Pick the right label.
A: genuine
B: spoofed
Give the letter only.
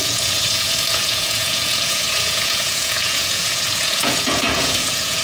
B